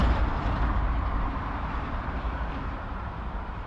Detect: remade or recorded remade